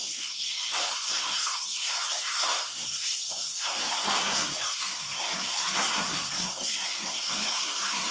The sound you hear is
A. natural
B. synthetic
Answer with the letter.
B